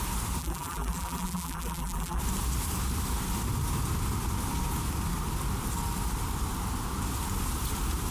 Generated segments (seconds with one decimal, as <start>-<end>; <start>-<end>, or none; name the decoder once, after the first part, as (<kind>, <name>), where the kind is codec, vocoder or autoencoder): 0.4-2.2 (vocoder, BigVGAN v2)